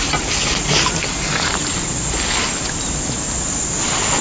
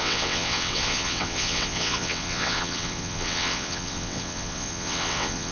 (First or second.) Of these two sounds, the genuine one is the first